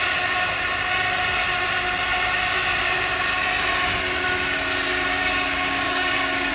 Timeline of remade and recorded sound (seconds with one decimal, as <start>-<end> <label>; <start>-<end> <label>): 0.0-5.2 recorded; 5.2-6.5 remade